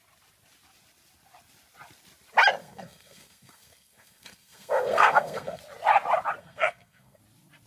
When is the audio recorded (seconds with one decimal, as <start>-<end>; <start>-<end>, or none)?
0.0-2.6; 5.6-6.4; 7.2-7.7